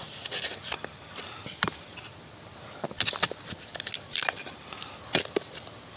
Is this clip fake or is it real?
real